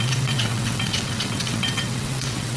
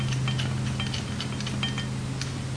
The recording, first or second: second